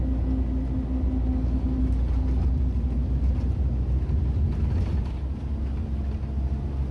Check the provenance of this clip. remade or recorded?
recorded